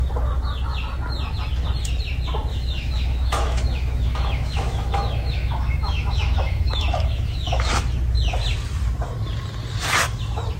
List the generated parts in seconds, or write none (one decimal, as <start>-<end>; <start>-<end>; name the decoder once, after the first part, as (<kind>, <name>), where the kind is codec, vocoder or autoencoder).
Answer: 2.5-7.7 (autoencoder, DAC-VAE)

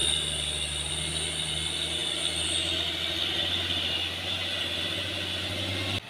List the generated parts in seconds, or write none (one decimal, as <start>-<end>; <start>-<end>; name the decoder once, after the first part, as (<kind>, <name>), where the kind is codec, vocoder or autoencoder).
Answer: none

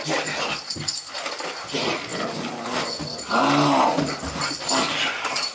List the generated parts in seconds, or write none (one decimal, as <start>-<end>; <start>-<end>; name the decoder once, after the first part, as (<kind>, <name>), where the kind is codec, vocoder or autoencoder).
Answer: none

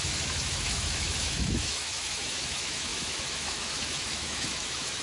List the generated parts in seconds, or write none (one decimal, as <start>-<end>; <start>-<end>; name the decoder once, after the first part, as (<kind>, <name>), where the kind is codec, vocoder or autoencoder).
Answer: 0.0-5.0 (autoencoder, DAC-VAE)

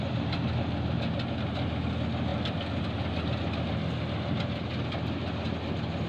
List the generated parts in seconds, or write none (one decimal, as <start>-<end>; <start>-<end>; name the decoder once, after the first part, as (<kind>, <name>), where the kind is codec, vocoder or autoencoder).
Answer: none

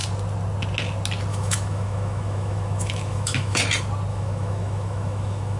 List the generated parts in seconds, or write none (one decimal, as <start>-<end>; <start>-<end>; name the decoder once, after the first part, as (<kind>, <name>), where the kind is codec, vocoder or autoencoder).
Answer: 1.3-3.6 (autoencoder, DAC-VAE); 4.1-5.6